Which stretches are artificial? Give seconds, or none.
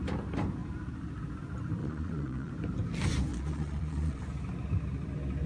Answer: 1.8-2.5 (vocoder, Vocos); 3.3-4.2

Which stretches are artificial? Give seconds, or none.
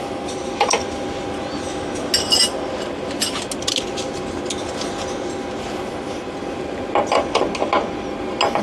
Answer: none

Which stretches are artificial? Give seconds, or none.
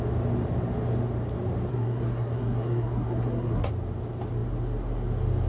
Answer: 1.7-3.7 (codec, SNAC)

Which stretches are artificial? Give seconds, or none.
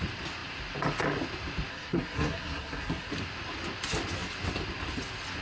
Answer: 1.7-3.1 (codec, SNAC)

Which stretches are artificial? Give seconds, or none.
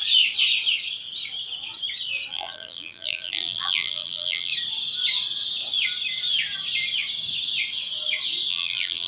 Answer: 2.3-4.5 (vocoder, BigVGAN v2); 8.5-9.1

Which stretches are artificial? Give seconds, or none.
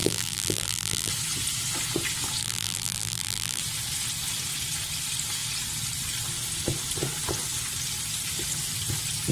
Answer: 0.0-1.1 (vocoder, BigVGAN v2); 2.4-3.6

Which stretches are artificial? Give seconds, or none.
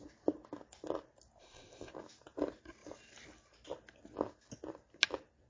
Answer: 1.4-1.9 (codec, ZipCodec)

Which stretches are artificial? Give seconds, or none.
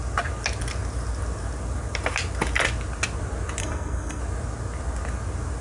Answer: 3.6-4.2 (codec, SNAC)